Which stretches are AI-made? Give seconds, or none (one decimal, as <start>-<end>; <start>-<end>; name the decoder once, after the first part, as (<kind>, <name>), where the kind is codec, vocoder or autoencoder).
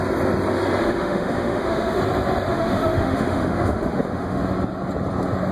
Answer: 0.8-2.0 (autoencoder, DAC-VAE); 2.5-4.4